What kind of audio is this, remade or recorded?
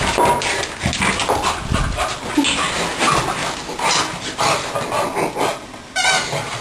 recorded